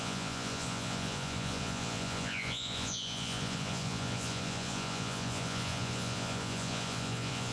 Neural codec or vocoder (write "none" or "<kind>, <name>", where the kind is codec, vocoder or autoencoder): vocoder, Vocos